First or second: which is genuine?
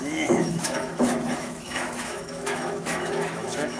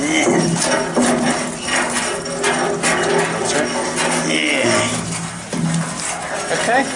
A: second